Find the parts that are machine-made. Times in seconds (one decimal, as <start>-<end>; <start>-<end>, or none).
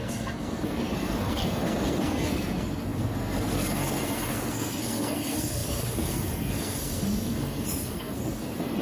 0.0-8.8